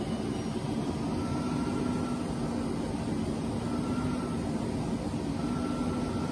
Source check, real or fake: real